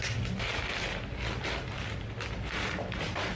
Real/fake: real